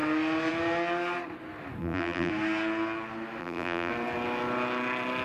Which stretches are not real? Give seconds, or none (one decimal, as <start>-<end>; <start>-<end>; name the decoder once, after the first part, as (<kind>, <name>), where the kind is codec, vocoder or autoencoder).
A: 1.8-2.3 (vocoder, BigVGAN v2); 3.4-3.9